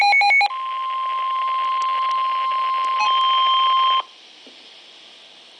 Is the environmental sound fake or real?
real